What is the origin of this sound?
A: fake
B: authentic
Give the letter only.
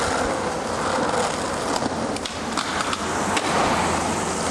B